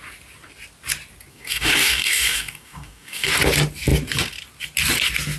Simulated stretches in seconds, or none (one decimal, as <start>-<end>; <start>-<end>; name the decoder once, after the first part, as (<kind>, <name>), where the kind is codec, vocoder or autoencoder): 1.3-3.3 (codec, DAC)